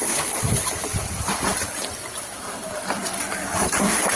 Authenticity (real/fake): real